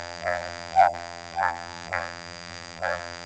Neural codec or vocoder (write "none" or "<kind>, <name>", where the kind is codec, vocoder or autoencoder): vocoder, BigVGAN v2